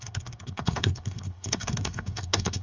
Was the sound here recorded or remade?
remade